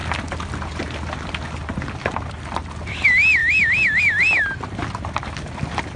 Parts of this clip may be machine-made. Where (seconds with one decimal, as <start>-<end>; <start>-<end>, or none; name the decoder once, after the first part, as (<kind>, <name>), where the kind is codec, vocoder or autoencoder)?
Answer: 0.0-1.3 (vocoder, BigVGAN v2)